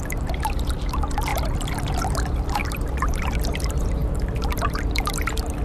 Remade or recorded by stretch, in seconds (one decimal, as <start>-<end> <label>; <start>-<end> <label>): 0.0-1.3 recorded; 1.3-2.1 remade; 2.1-2.6 recorded; 2.6-3.1 remade; 3.1-4.0 recorded; 4.0-4.6 remade; 4.6-5.6 recorded